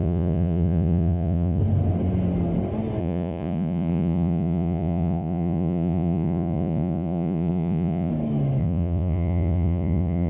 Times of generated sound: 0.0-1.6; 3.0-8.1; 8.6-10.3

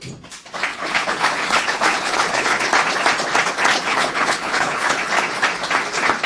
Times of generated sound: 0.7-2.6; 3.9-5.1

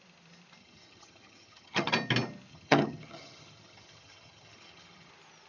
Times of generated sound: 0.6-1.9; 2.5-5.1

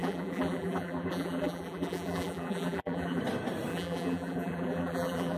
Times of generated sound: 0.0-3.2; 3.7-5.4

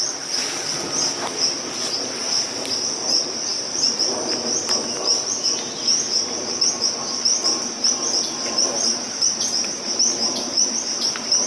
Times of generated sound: none

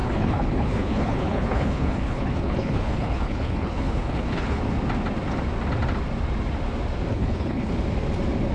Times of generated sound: 0.0-4.6; 7.1-7.7

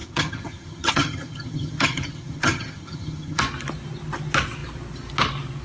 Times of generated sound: 0.0-3.4

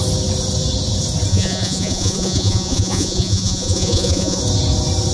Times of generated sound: 1.3-4.4